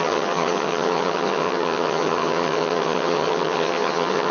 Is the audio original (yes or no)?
no